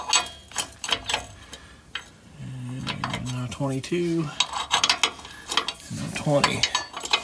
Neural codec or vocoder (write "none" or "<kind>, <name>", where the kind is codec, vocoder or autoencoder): none